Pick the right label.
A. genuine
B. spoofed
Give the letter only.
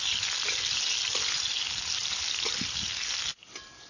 A